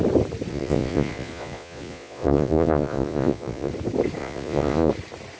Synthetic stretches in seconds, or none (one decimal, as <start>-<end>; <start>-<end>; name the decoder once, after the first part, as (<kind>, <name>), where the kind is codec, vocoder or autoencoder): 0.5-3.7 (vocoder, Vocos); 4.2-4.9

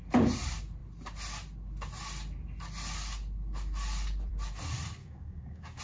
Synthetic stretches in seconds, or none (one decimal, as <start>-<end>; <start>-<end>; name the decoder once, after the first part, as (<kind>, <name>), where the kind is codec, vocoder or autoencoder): 5.0-5.8 (codec, DAC)

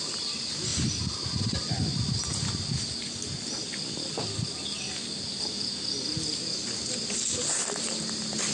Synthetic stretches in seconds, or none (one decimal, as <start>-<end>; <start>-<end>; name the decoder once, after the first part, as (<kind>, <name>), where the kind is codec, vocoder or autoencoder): none